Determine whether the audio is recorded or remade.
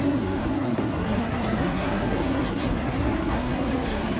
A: remade